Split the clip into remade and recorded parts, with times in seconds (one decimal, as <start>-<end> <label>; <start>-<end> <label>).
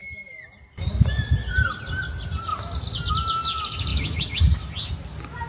0.0-3.9 recorded; 3.9-4.4 remade; 4.4-5.5 recorded